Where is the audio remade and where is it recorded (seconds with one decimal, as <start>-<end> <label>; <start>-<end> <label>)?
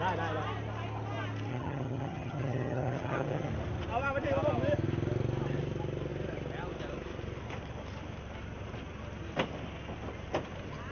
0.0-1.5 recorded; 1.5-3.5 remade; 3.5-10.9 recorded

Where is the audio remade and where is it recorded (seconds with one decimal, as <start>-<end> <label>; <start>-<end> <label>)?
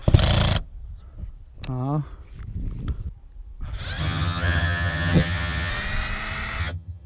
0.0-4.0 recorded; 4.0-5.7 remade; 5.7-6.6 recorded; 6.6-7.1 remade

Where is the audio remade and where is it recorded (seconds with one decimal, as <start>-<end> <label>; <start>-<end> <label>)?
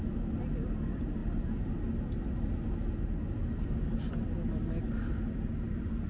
0.0-6.1 recorded